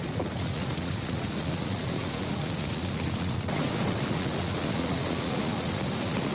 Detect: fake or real fake